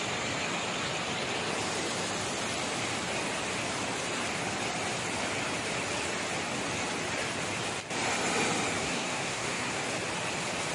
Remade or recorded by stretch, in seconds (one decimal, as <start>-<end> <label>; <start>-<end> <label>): 0.0-8.8 recorded; 8.8-9.8 remade; 9.8-10.7 recorded